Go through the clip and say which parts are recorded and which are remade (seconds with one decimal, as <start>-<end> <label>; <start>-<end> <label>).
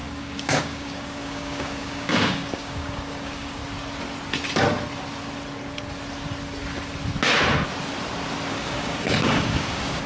0.0-3.6 remade; 3.6-8.5 recorded; 8.5-10.1 remade